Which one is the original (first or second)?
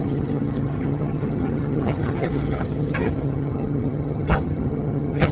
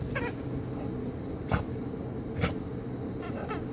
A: second